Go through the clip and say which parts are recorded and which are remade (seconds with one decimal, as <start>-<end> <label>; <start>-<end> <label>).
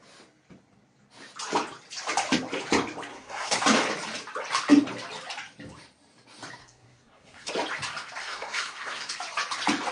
0.0-3.1 recorded; 3.1-3.6 remade; 3.6-6.6 recorded; 6.6-7.5 remade; 7.5-8.2 recorded; 8.2-9.1 remade; 9.1-9.9 recorded